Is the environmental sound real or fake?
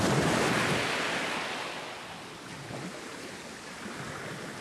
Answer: real